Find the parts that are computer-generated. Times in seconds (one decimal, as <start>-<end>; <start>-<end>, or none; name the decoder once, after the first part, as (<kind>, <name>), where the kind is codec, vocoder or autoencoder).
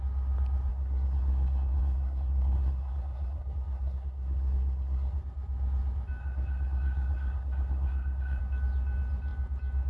0.7-5.2 (codec, SNAC); 6.2-8.4